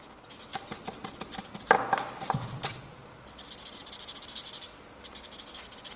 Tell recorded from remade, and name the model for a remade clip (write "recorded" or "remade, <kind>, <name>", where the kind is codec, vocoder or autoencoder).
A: recorded